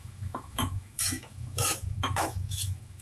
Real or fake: fake